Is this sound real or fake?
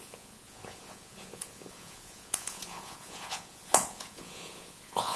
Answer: fake